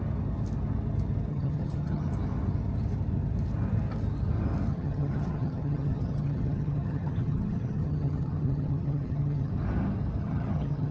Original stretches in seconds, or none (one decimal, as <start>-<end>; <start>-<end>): 0.0-1.3; 2.1-4.7; 9.5-10.2